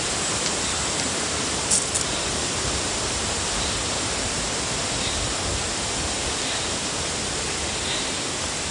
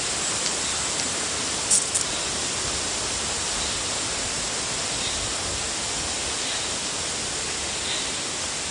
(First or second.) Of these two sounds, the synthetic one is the first